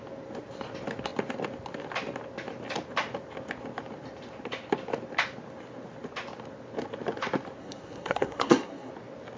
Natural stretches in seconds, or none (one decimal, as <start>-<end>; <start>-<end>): 0.0-7.6; 8.9-9.4